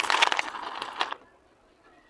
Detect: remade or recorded recorded